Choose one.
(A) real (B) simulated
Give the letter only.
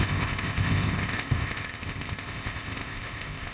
B